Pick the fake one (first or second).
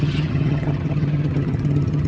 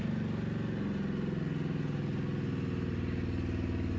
first